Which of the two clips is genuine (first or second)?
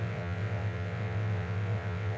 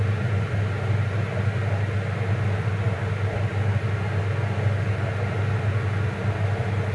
second